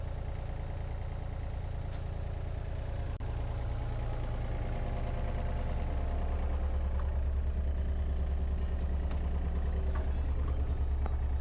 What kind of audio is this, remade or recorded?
recorded